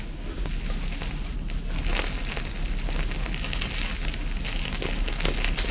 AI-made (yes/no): no